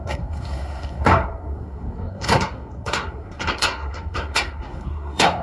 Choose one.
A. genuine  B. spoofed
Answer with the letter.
B